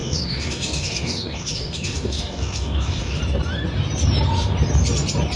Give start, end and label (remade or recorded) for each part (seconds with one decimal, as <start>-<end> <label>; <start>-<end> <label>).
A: 0.0-3.2 remade; 3.2-5.4 recorded